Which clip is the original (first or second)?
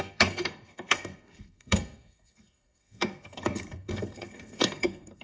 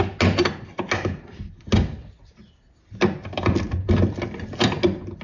second